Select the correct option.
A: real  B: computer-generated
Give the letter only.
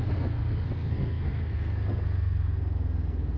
B